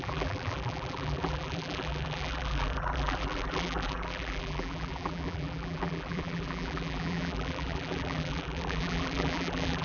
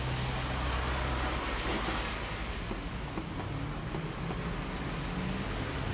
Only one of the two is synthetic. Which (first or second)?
first